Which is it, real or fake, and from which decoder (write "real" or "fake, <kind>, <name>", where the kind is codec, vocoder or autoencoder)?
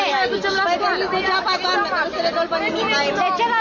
real